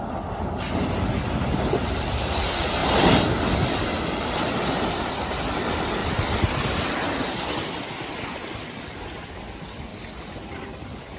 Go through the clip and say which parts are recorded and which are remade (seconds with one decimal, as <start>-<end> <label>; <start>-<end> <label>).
0.0-11.2 recorded